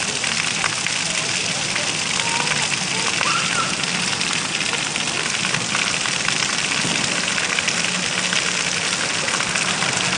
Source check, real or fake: real